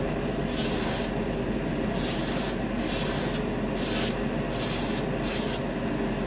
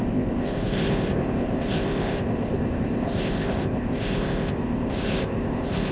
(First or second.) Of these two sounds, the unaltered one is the first